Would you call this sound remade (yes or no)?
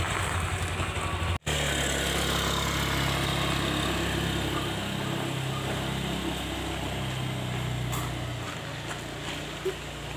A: no